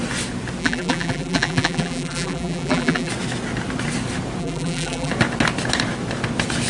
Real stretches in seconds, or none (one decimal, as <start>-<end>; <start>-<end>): 0.0-0.6; 3.1-4.4; 5.1-6.7